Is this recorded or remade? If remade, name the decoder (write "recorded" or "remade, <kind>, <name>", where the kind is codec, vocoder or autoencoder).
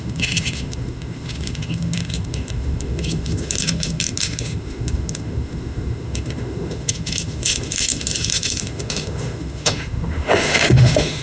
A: remade, autoencoder, DAC-VAE